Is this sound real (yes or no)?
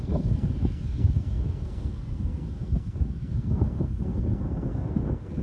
no